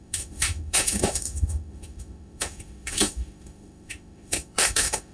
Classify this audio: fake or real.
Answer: fake